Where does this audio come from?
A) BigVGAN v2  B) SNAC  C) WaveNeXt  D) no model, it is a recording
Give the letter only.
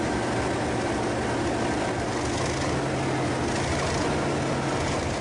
D